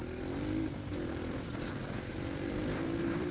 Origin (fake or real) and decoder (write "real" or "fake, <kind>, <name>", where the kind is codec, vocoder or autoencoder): fake, vocoder, BigVGAN v2